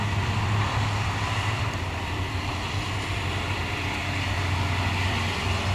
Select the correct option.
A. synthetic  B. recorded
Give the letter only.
B